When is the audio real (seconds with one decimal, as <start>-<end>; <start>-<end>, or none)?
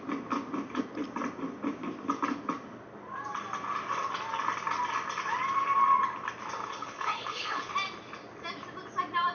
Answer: 0.0-6.6; 7.7-9.3